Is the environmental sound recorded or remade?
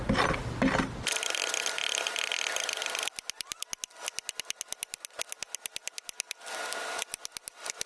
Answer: recorded